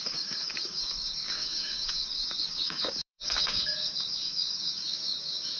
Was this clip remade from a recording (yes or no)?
yes